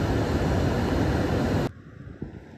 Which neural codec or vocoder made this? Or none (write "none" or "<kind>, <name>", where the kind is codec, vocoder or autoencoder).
none